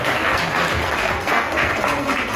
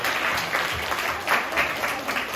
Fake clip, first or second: first